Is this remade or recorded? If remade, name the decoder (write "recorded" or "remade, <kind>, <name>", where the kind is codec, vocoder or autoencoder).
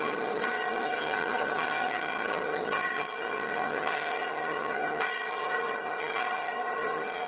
remade, vocoder, HiFi-GAN